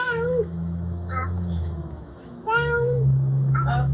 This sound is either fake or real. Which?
fake